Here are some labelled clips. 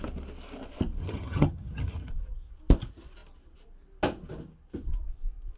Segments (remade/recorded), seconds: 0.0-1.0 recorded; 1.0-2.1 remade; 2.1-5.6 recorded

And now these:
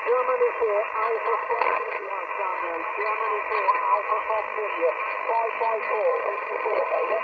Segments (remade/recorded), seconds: 0.0-1.4 recorded; 1.4-2.1 remade; 2.1-6.1 recorded; 6.1-7.2 remade

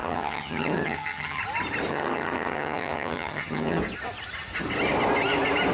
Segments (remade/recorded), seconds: 0.0-1.4 remade; 1.4-1.9 recorded; 1.9-3.8 remade; 3.8-5.7 recorded

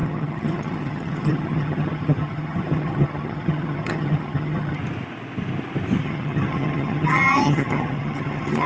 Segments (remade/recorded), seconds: 0.0-4.8 remade; 4.8-6.0 recorded; 6.0-8.7 remade

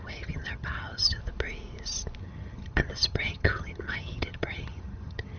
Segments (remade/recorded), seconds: 0.0-1.2 remade; 1.2-2.2 recorded; 2.2-5.4 remade

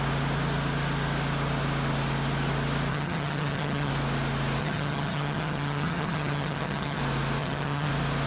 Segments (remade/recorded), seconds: 0.0-2.9 recorded; 2.9-3.9 remade; 3.9-4.6 recorded; 4.6-7.0 remade; 7.0-7.4 recorded; 7.4-7.9 remade; 7.9-8.3 recorded

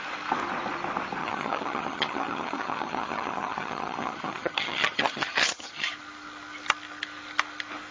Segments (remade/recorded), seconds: 0.0-1.2 recorded; 1.2-5.9 remade; 5.9-7.9 recorded